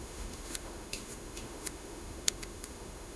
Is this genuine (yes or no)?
no